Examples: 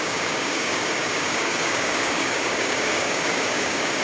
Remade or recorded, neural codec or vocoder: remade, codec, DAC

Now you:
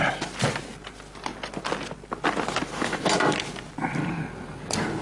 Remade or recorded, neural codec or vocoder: recorded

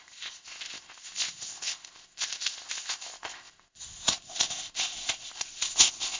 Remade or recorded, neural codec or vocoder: remade, codec, ZipCodec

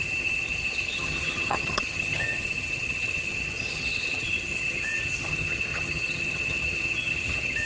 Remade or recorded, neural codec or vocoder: remade, vocoder, HiFi-GAN